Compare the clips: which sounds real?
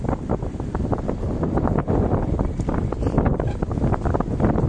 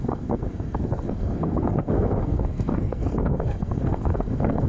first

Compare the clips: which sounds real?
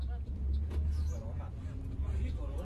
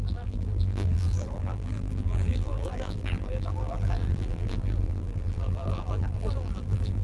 first